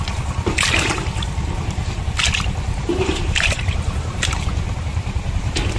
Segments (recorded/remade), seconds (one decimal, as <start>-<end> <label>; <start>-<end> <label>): 0.0-2.9 recorded; 2.9-4.3 remade; 4.3-5.8 recorded